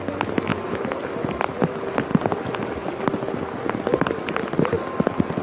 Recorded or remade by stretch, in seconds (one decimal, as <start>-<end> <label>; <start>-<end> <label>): 0.0-5.4 recorded